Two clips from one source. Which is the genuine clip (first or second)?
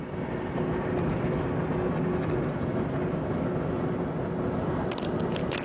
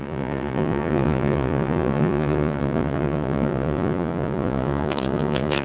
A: first